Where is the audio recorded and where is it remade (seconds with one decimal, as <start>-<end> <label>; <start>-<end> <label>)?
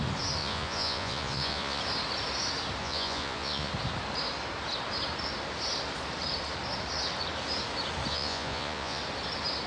0.0-0.4 recorded; 0.4-1.8 remade; 1.8-2.8 recorded; 2.8-3.7 remade; 3.7-8.1 recorded; 8.1-9.0 remade; 9.0-9.7 recorded